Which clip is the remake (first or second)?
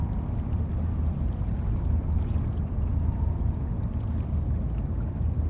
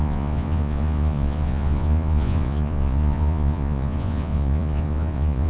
second